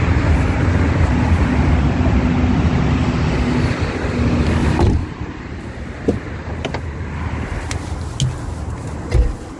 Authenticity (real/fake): real